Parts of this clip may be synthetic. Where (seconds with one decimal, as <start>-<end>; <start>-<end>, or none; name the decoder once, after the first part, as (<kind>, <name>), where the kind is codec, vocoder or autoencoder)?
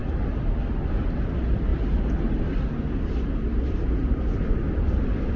none